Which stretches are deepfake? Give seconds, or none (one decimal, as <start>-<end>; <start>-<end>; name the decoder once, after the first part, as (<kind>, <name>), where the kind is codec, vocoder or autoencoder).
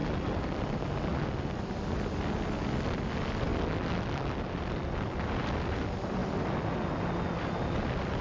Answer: none